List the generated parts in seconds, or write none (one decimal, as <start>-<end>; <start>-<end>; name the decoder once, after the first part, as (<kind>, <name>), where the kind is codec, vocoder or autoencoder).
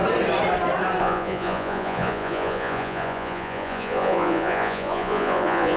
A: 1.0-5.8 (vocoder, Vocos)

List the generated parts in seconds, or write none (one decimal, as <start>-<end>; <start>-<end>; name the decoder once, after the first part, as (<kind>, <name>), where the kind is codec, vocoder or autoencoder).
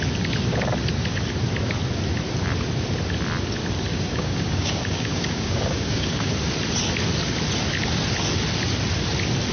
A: 3.9-6.3 (codec, DAC)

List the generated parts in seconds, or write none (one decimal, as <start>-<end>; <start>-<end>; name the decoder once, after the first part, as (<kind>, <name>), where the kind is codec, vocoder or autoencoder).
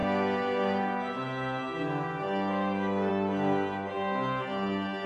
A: none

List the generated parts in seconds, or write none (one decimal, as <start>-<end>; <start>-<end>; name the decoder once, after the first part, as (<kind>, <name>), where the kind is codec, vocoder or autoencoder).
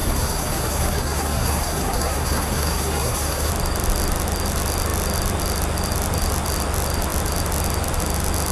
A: 0.0-3.5 (codec, SNAC)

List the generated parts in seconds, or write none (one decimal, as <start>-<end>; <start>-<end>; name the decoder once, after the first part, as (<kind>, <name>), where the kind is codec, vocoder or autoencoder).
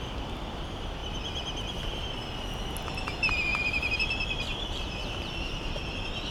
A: 1.0-2.0 (vocoder, BigVGAN v2); 3.5-6.3